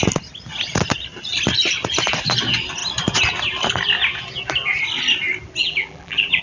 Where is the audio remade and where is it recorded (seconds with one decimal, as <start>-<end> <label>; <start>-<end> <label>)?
0.0-5.6 recorded; 5.6-6.4 remade

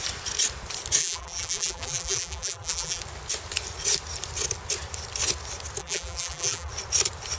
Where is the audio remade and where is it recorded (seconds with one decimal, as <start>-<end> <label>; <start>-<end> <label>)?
0.0-1.0 recorded; 1.0-3.0 remade; 3.0-5.8 recorded; 5.8-6.7 remade; 6.7-7.4 recorded

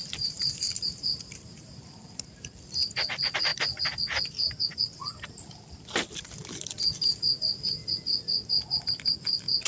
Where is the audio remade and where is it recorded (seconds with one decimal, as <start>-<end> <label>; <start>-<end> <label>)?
0.0-2.5 remade; 2.5-9.7 recorded

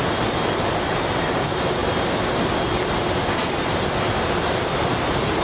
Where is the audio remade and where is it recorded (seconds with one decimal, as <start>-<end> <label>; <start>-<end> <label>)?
0.0-1.8 remade; 1.8-5.0 recorded; 5.0-5.4 remade

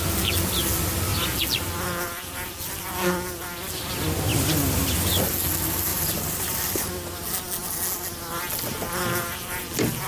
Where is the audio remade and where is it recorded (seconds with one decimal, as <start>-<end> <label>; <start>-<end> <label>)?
0.0-4.3 recorded; 4.3-5.2 remade; 5.2-5.9 recorded; 5.9-6.9 remade; 6.9-10.1 recorded

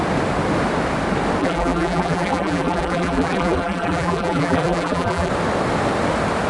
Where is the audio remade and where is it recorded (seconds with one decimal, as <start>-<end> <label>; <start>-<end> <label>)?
0.0-1.4 recorded; 1.4-5.3 remade; 5.3-6.5 recorded

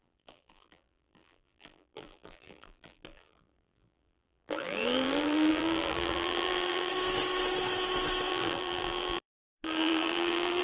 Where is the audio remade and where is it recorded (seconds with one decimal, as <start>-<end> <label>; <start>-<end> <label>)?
0.0-6.9 remade; 6.9-8.3 recorded; 8.3-10.6 remade